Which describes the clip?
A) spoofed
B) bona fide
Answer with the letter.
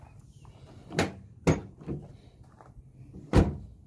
B